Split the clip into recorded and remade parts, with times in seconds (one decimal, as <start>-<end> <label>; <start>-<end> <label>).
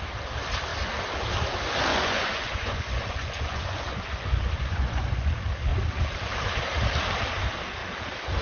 0.0-1.9 recorded; 1.9-5.3 remade; 5.3-8.4 recorded